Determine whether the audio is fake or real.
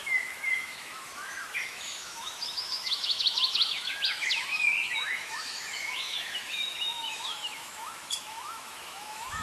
fake